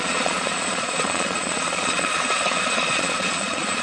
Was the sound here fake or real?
fake